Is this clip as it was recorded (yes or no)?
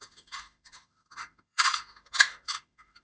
no